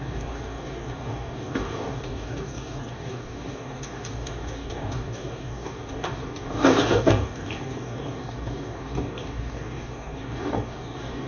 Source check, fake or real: fake